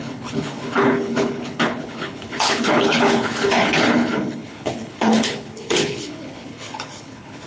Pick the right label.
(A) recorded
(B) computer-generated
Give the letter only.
B